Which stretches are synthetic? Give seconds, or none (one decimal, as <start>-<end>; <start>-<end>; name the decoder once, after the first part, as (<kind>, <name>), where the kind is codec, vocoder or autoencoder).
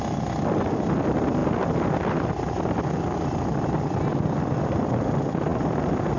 none